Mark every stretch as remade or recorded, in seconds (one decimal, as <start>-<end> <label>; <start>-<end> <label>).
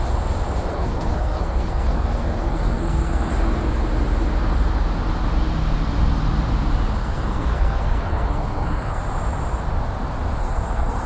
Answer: 0.0-0.7 recorded; 0.7-3.3 remade; 3.3-7.0 recorded; 7.0-9.0 remade; 9.0-10.4 recorded; 10.4-11.1 remade